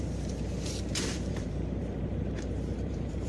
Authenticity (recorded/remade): remade